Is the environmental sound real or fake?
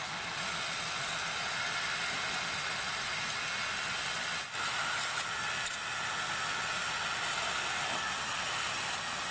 real